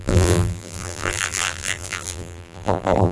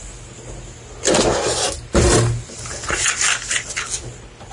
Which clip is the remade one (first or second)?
first